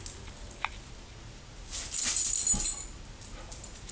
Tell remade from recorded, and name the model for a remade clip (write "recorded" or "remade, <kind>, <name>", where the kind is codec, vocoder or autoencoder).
recorded